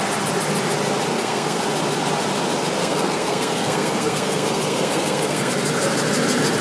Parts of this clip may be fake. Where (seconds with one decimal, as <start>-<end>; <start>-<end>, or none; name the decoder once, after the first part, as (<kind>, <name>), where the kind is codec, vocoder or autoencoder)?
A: 1.1-1.6 (codec, SNAC); 2.8-5.5